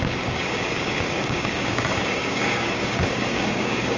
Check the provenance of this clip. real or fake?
fake